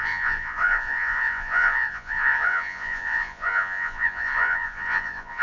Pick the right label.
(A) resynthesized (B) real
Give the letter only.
A